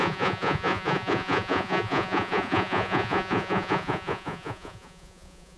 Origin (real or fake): fake